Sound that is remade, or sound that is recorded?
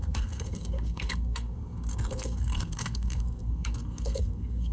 remade